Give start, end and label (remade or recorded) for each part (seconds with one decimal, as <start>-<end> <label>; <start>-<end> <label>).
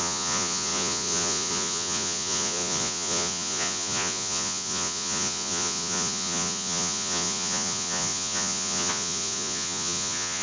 0.0-10.4 remade